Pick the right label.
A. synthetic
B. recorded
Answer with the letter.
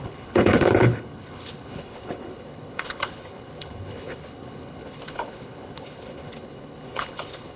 A